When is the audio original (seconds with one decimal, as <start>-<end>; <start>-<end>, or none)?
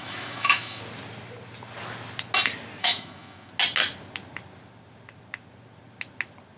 0.8-2.8; 3.5-6.6